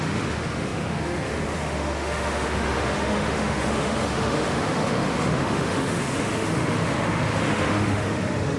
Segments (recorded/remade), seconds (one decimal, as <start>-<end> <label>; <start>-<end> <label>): 0.0-8.6 remade